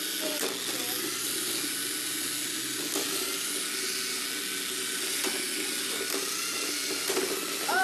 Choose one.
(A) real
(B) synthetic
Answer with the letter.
A